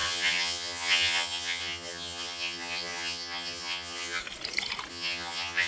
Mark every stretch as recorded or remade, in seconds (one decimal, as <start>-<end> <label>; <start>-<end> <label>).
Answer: 0.0-4.2 remade; 4.2-4.9 recorded; 4.9-5.7 remade